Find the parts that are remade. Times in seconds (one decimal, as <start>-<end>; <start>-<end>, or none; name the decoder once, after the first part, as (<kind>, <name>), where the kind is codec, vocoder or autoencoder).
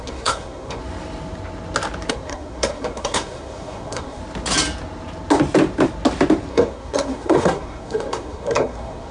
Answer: 0.0-0.8 (codec, SNAC); 2.1-4.2; 6.5-9.1